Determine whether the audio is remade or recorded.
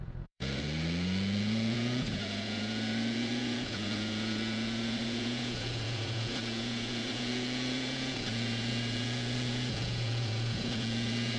remade